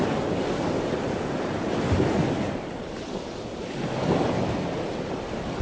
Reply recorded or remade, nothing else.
recorded